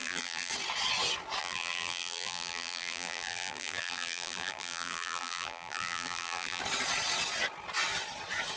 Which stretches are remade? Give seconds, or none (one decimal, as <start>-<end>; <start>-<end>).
0.0-0.5; 1.4-6.6